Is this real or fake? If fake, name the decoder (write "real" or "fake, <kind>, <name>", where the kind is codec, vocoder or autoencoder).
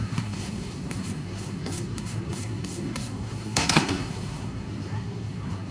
fake, codec, SNAC